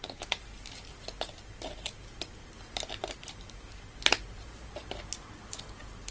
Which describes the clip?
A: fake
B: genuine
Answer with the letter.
B